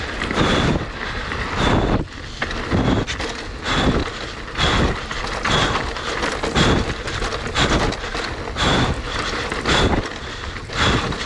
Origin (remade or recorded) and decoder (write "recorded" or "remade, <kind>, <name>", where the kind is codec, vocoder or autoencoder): recorded